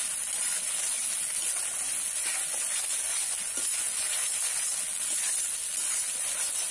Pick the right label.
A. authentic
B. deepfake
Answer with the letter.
A